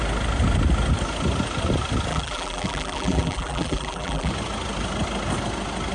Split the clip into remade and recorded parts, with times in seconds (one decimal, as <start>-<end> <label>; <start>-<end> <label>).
0.0-2.1 recorded; 2.1-4.3 remade; 4.3-5.9 recorded